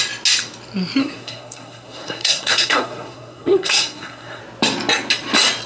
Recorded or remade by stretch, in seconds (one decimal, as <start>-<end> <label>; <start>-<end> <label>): 0.0-1.0 recorded; 1.0-4.4 remade; 4.4-5.7 recorded